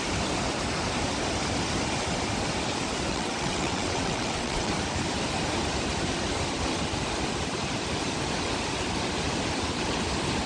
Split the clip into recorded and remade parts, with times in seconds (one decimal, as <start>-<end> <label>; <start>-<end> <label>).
0.0-3.1 recorded; 3.1-4.7 remade; 4.7-10.5 recorded

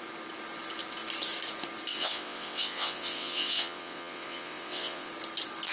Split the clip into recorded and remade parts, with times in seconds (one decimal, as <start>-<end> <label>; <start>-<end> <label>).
0.0-1.9 recorded; 1.9-5.1 remade; 5.1-5.7 recorded